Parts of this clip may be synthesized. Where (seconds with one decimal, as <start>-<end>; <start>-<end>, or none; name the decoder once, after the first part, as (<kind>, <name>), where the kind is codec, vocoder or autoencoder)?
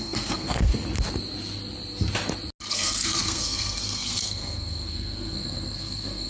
0.0-0.7 (codec, SNAC); 2.7-6.3